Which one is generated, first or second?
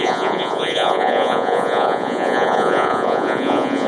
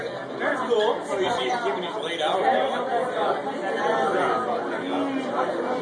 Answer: first